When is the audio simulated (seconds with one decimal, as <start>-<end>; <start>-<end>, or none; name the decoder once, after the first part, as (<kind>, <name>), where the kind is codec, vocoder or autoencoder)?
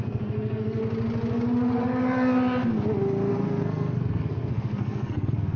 0.0-0.8 (codec, SNAC); 3.3-5.6